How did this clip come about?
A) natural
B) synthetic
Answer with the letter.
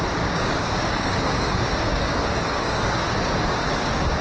B